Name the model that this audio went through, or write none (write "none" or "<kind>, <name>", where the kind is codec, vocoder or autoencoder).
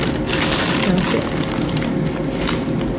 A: none